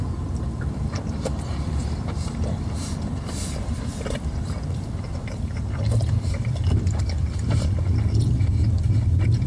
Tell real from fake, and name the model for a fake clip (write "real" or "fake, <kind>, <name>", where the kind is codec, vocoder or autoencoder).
fake, vocoder, BigVGAN v2